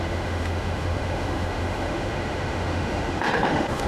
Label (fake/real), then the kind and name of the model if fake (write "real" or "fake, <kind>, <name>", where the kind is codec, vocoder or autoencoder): fake, autoencoder, DAC-VAE